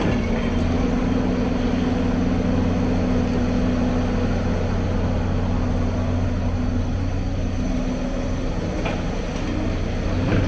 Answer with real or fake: real